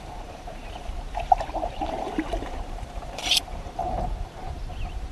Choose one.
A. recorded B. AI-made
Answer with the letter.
B